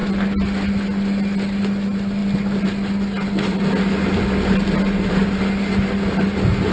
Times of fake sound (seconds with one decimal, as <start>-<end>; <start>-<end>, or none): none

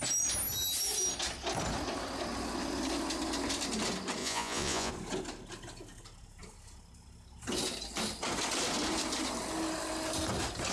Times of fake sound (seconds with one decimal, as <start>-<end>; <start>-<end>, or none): 4.2-4.9

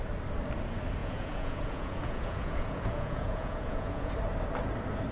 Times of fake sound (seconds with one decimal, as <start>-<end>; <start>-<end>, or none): 1.0-4.1

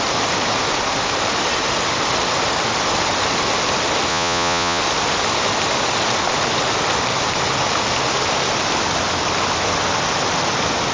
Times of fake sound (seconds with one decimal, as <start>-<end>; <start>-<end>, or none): 4.1-4.8

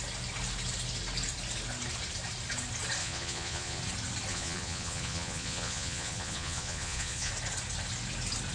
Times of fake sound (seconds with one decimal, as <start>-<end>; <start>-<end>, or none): 3.0-3.8; 4.3-7.3